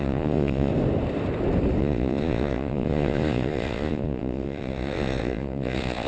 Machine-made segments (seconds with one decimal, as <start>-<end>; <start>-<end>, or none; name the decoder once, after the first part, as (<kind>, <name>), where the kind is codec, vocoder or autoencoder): 0.0-0.7 (vocoder, Vocos); 1.8-6.1